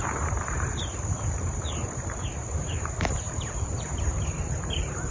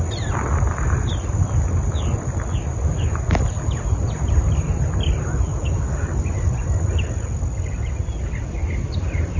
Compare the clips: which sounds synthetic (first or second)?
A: first